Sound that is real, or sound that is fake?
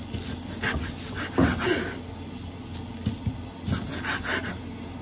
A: real